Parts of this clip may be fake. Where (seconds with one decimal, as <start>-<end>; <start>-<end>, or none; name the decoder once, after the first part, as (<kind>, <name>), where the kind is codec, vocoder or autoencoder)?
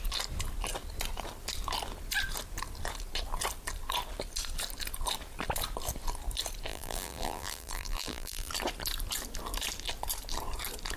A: 6.7-8.5 (vocoder, BigVGAN v2)